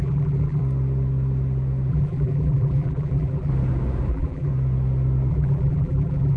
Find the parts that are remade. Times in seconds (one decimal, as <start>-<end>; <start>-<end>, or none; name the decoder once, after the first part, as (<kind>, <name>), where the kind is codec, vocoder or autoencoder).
0.0-0.6 (vocoder, BigVGAN v2); 1.9-3.5; 4.1-4.5; 5.3-6.4